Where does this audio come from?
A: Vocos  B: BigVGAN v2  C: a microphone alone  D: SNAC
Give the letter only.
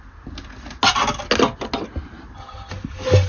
C